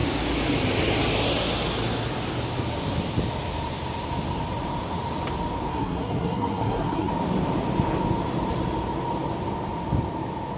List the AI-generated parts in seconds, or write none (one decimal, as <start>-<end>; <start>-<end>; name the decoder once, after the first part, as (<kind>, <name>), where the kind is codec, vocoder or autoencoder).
5.7-7.1 (codec, SNAC)